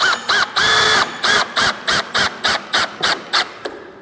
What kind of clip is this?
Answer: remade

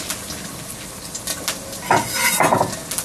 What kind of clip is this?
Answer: recorded